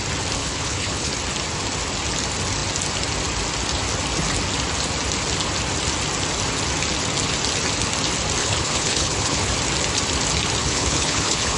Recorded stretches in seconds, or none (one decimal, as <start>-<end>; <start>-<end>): 0.0-0.4; 1.1-8.4; 9.5-10.6